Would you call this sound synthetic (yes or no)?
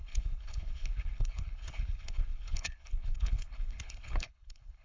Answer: yes